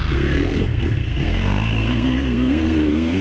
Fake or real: fake